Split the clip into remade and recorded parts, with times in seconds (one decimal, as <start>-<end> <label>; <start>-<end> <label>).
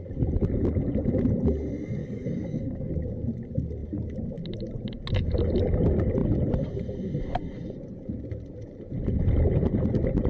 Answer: 0.0-2.0 recorded; 2.0-2.9 remade; 2.9-10.3 recorded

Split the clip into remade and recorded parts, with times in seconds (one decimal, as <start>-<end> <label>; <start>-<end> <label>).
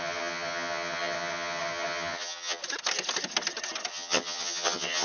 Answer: 0.0-2.6 remade; 2.6-3.9 recorded; 3.9-5.0 remade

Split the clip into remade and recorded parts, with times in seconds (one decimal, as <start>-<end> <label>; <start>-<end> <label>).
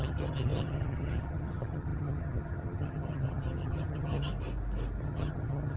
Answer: 0.0-4.3 remade; 4.3-5.0 recorded; 5.0-5.8 remade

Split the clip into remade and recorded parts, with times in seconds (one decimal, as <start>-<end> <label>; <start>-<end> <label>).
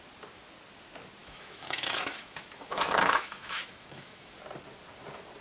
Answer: 0.0-1.2 recorded; 1.2-4.4 remade; 4.4-5.4 recorded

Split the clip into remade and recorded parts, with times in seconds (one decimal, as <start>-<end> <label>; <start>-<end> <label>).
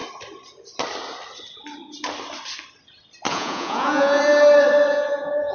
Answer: 0.0-3.3 recorded; 3.3-4.2 remade; 4.2-4.9 recorded; 4.9-5.5 remade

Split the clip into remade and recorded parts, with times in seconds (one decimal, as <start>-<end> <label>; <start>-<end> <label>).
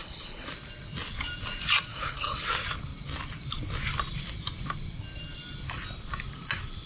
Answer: 0.0-0.5 remade; 0.5-1.9 recorded; 1.9-2.5 remade; 2.5-6.9 recorded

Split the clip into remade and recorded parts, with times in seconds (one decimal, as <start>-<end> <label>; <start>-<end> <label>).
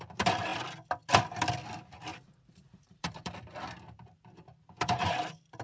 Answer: 0.0-2.1 recorded; 2.1-3.3 remade; 3.3-5.6 recorded